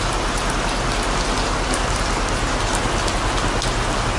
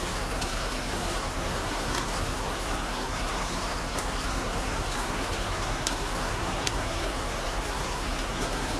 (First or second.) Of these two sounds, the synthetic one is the second